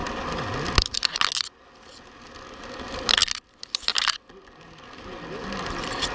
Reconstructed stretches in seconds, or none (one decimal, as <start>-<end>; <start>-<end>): none